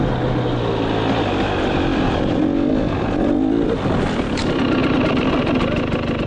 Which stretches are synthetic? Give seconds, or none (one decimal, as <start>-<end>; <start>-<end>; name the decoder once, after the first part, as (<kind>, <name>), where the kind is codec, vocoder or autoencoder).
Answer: none